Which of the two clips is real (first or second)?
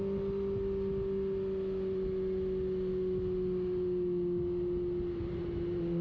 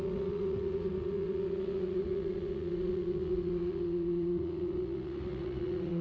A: first